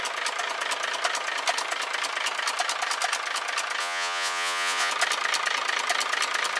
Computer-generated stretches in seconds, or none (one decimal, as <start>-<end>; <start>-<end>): 3.8-4.9